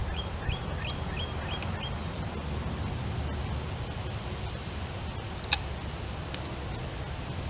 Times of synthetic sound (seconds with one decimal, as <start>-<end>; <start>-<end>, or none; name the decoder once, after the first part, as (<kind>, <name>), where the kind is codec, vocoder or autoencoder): 0.0-0.7 (vocoder, BigVGAN v2)